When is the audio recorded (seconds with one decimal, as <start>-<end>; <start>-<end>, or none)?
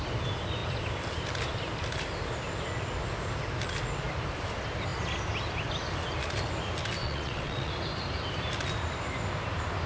0.0-7.0; 7.7-9.9